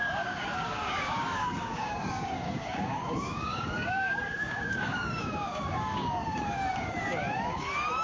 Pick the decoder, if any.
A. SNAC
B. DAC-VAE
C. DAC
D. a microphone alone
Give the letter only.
C